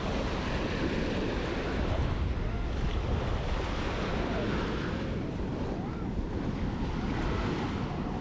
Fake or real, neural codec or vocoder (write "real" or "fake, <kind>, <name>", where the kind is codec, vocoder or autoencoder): real